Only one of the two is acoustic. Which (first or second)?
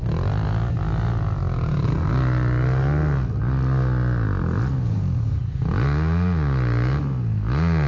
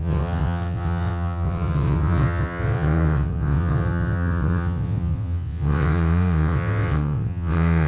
first